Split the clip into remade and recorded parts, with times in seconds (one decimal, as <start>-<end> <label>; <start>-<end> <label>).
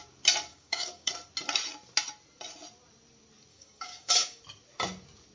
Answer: 0.0-0.5 recorded; 0.5-1.1 remade; 1.1-3.5 recorded; 3.5-4.4 remade; 4.4-5.3 recorded